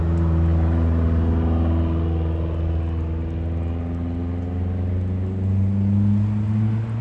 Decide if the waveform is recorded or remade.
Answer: recorded